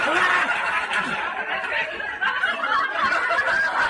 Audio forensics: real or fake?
real